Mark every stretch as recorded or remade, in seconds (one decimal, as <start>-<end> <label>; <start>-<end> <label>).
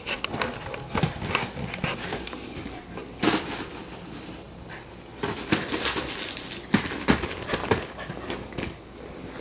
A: 0.0-2.1 recorded; 2.1-3.2 remade; 3.2-7.6 recorded; 7.6-9.0 remade; 9.0-9.4 recorded